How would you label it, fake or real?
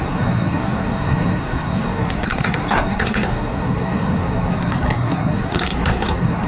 fake